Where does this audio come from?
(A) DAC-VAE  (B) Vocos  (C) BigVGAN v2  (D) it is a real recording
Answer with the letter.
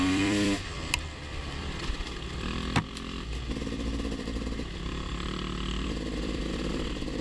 C